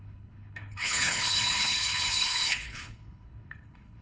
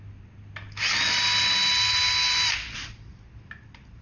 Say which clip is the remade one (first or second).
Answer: first